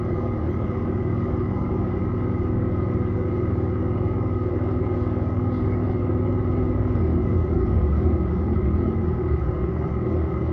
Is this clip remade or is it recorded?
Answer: remade